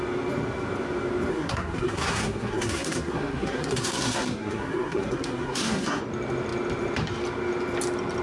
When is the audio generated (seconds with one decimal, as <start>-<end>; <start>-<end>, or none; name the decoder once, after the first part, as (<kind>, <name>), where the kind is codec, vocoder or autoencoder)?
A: 1.3-6.0 (codec, SNAC)